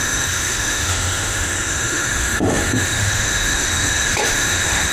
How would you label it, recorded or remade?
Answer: remade